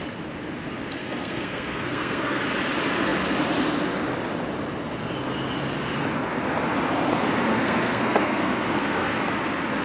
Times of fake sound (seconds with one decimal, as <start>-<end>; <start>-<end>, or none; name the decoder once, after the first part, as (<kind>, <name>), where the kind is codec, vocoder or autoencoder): 1.0-2.4 (codec, SNAC); 7.5-9.2